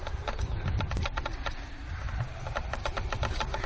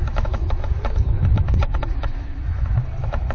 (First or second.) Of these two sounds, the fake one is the second